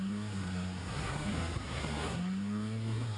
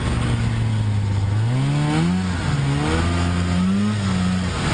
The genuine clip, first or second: second